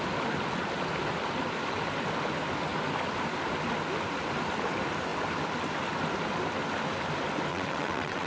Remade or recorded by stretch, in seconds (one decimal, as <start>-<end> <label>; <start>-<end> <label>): 0.0-7.5 recorded; 7.5-8.3 remade